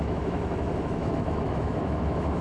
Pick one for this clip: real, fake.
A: fake